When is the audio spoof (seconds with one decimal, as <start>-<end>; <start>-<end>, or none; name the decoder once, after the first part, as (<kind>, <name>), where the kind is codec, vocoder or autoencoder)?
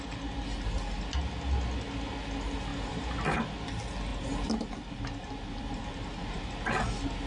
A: 2.7-3.2 (vocoder, BigVGAN v2); 4.1-6.5